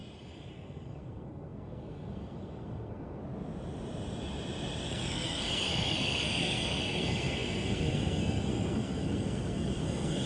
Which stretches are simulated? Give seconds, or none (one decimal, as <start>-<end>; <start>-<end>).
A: 0.5-3.2; 4.9-10.3